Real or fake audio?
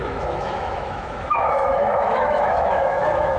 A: fake